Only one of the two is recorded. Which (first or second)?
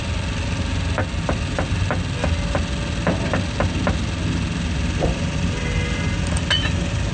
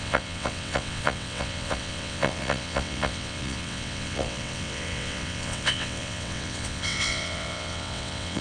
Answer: first